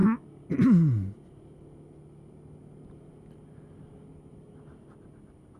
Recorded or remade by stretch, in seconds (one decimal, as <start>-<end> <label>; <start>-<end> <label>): 0.0-5.6 recorded